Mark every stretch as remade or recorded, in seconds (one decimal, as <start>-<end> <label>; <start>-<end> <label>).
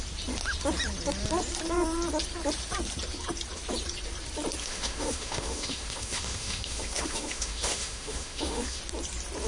0.0-4.6 recorded; 4.6-8.8 remade; 8.8-9.5 recorded